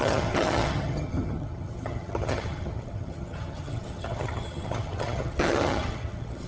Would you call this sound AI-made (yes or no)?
yes